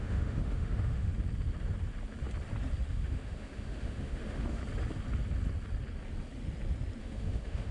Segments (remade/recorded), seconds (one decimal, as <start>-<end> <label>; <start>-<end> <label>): 0.0-1.1 remade; 1.1-2.9 recorded; 2.9-4.6 remade; 4.6-7.0 recorded; 7.0-7.7 remade